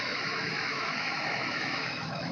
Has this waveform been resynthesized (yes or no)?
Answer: yes